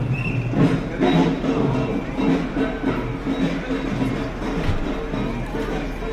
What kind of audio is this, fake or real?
real